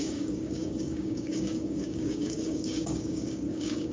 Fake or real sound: fake